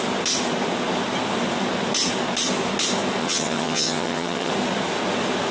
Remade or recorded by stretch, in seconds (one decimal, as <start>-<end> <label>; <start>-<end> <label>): 0.0-3.2 recorded; 3.2-4.5 remade; 4.5-5.5 recorded